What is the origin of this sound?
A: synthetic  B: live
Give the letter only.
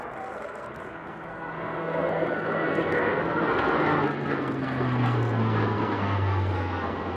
A